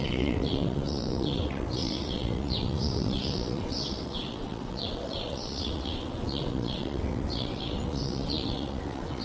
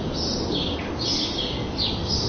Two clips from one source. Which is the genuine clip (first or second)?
second